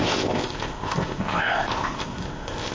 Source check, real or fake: fake